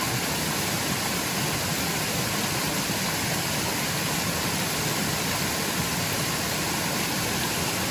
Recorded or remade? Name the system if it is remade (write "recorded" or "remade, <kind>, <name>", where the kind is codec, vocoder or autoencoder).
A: recorded